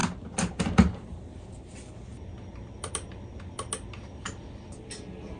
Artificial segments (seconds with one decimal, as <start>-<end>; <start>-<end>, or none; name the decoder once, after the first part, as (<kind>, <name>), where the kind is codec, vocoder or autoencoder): none

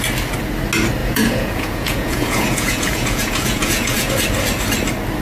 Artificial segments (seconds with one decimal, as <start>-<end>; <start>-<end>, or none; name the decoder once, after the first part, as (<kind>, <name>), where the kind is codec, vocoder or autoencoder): 1.0-4.1 (vocoder, Vocos)

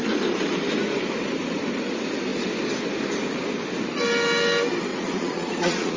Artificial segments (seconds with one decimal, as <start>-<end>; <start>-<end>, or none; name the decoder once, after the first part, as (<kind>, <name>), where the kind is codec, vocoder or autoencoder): 4.9-6.0 (vocoder, Vocos)

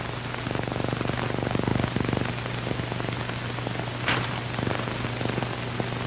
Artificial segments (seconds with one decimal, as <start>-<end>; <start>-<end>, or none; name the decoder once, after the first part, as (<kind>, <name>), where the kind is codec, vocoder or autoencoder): none